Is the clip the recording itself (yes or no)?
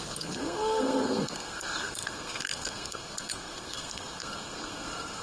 no